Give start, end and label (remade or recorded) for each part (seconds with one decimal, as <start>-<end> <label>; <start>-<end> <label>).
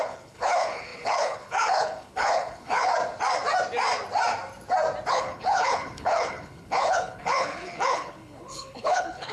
0.0-2.9 remade; 2.9-5.1 recorded; 5.1-9.3 remade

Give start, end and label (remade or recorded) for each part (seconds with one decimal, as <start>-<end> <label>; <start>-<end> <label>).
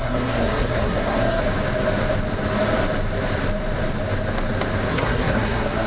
0.0-1.4 remade; 1.4-4.9 recorded; 4.9-5.9 remade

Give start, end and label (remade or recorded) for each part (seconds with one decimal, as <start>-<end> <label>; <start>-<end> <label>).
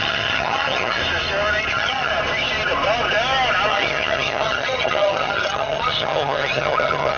0.0-1.0 remade; 1.0-1.7 recorded; 1.7-2.1 remade; 2.1-3.7 recorded; 3.7-7.2 remade